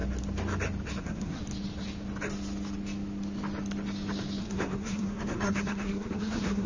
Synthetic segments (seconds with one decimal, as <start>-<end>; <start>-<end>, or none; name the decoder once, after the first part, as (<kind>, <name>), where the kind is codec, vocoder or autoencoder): 1.0-1.4 (codec, SNAC); 4.4-6.7